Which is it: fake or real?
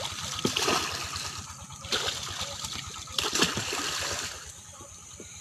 real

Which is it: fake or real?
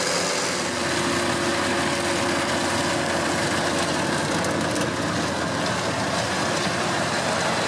real